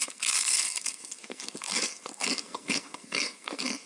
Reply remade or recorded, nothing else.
remade